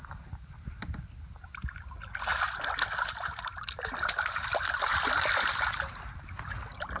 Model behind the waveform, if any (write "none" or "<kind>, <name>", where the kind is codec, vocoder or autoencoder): none